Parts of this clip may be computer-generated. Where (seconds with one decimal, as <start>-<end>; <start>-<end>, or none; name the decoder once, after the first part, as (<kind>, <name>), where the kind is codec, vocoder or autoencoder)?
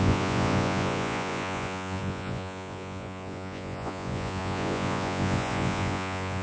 0.0-6.4 (vocoder, Vocos)